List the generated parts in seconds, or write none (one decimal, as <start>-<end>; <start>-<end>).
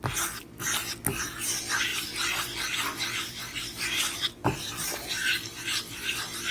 1.9-5.8